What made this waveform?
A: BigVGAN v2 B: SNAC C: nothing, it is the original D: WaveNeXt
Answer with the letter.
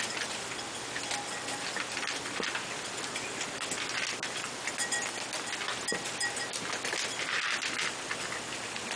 C